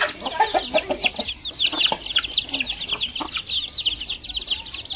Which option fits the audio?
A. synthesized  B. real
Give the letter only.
B